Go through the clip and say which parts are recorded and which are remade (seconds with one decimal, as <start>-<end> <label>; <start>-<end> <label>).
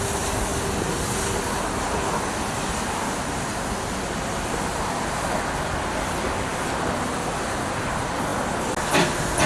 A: 0.0-9.5 recorded